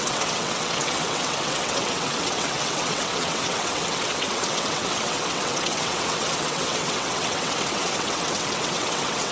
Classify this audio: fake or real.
fake